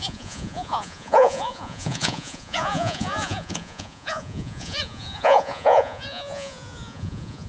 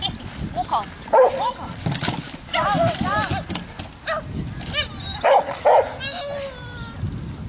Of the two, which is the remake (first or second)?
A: first